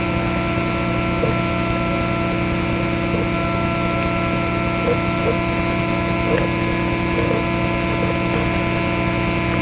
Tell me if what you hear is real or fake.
real